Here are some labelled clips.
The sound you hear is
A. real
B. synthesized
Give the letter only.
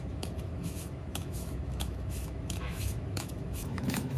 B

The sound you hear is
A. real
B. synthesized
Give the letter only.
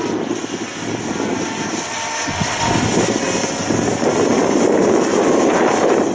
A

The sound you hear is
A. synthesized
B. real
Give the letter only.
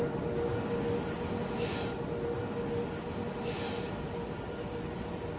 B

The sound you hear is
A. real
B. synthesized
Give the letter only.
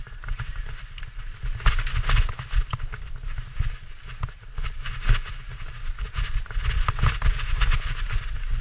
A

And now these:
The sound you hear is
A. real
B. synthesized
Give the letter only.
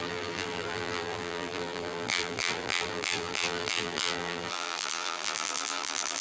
B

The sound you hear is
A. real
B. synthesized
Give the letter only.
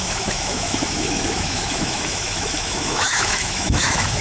B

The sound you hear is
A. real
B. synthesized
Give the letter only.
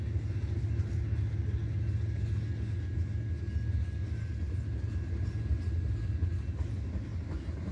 A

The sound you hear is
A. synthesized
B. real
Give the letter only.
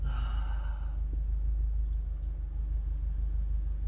B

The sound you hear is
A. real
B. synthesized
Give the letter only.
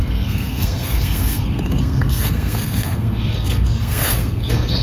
B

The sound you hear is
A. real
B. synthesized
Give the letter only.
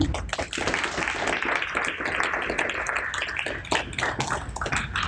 A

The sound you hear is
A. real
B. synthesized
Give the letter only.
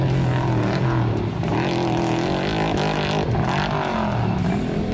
A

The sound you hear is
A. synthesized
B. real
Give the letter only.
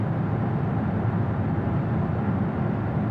A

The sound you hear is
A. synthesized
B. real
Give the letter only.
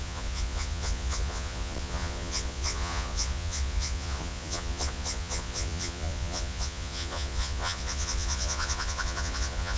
A